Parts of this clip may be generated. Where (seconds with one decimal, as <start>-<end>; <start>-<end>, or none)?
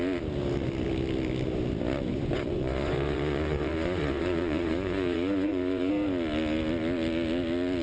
2.1-5.9